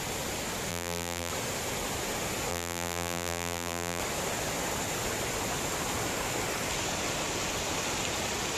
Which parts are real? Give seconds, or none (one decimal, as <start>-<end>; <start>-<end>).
0.0-0.7; 1.3-2.5; 4.0-8.6